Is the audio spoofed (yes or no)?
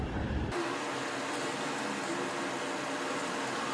no